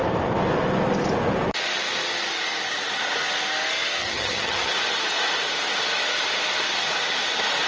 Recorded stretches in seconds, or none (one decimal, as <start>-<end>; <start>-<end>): 0.0-4.0; 4.7-7.7